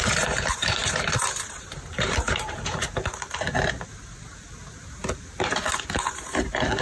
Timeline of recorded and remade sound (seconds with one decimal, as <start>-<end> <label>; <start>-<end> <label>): 0.0-6.8 remade